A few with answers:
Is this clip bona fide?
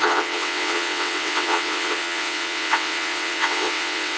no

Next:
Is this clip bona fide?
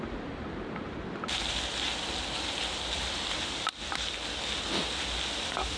yes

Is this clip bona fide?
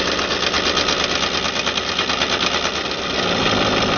yes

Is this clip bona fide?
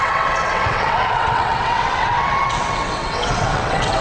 no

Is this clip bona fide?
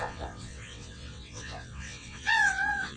no